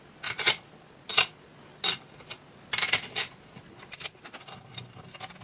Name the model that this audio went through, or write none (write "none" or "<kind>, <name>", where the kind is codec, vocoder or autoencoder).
none